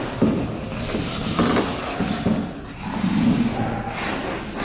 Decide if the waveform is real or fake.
real